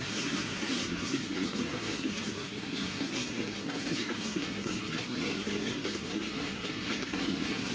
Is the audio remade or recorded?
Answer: remade